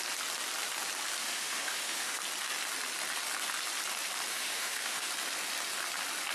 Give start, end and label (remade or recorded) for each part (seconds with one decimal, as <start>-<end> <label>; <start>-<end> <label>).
0.0-1.2 recorded; 1.2-2.2 remade; 2.2-4.3 recorded; 4.3-5.1 remade; 5.1-6.3 recorded